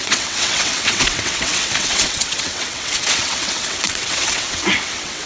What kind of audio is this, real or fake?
fake